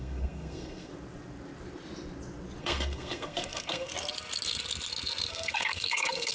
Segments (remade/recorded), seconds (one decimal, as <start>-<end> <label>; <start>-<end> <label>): 0.0-0.9 remade; 0.9-2.6 recorded; 2.6-3.9 remade; 3.9-5.3 recorded; 5.3-6.3 remade